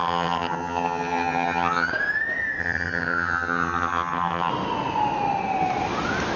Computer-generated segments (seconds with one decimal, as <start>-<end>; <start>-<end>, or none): 0.0-1.9; 2.6-4.5